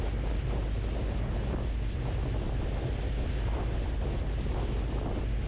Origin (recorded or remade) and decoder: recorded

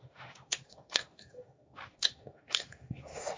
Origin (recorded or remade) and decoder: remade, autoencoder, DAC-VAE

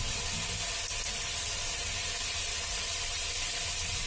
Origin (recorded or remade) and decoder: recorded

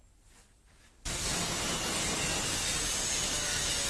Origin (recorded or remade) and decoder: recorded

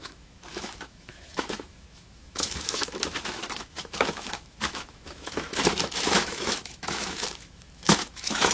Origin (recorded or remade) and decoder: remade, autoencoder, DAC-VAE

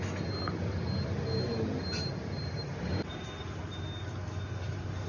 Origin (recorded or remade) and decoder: recorded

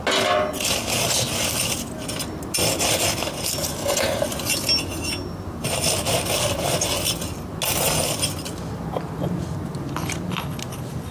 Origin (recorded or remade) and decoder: recorded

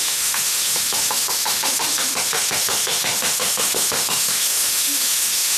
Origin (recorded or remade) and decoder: remade, autoencoder, DAC-VAE